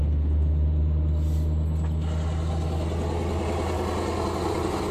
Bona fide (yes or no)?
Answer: yes